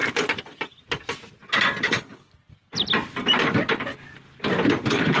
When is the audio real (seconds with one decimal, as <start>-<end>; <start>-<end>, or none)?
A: 0.0-1.8; 2.3-4.8